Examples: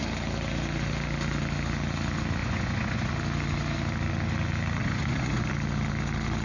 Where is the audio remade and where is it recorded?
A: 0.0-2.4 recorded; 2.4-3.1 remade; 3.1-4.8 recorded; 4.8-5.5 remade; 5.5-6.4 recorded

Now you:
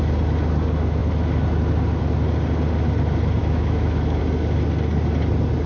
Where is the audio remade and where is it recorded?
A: 0.0-3.4 recorded; 3.4-4.2 remade; 4.2-5.7 recorded

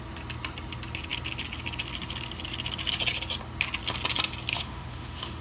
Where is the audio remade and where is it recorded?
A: 0.0-4.5 recorded; 4.5-5.4 remade

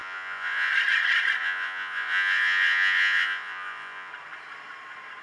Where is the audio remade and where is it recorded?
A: 0.0-0.7 remade; 0.7-1.4 recorded; 1.4-4.1 remade; 4.1-5.2 recorded

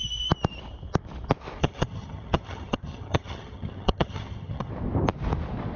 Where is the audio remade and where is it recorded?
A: 0.0-1.6 recorded; 1.6-4.7 remade; 4.7-5.8 recorded